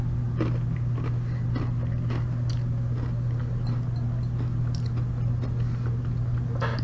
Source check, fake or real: real